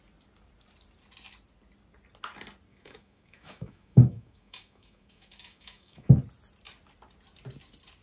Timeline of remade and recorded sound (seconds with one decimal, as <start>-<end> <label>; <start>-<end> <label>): 0.0-2.7 recorded; 2.7-6.2 remade; 6.2-8.0 recorded